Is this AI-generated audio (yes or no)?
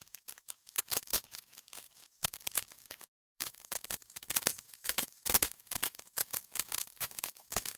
yes